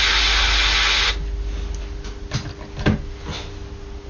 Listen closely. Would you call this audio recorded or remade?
recorded